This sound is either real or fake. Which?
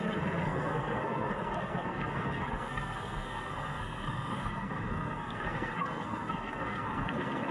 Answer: fake